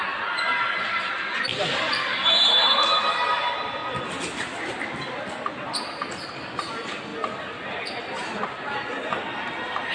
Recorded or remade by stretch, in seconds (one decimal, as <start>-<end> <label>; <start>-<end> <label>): 0.0-9.9 recorded

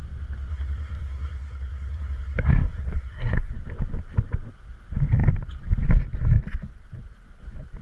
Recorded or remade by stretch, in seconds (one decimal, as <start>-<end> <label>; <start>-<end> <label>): 0.0-0.5 recorded; 0.5-3.5 remade; 3.5-7.8 recorded